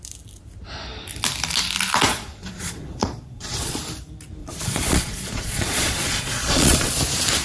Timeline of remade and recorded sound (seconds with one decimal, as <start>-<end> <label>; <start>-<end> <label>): 0.0-2.1 recorded; 2.1-3.8 remade; 3.8-4.4 recorded; 4.4-7.0 remade; 7.0-7.4 recorded